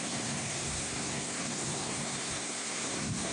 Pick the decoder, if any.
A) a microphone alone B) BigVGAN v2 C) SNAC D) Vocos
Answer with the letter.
C